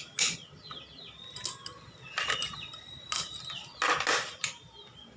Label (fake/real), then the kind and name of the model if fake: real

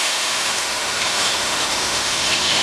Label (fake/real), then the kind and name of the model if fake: fake, autoencoder, DAC-VAE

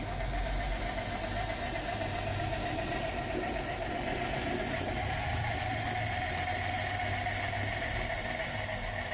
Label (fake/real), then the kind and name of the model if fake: real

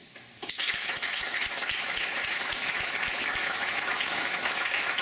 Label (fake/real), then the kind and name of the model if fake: fake, autoencoder, DAC-VAE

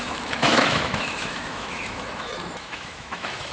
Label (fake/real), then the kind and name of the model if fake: fake, autoencoder, DAC-VAE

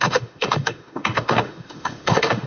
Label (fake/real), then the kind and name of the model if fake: fake, autoencoder, DAC-VAE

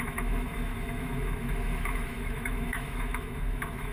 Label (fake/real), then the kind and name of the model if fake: fake, autoencoder, DAC-VAE